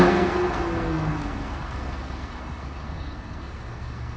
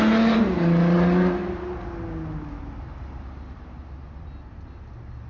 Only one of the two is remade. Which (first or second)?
first